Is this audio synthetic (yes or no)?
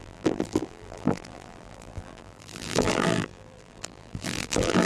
yes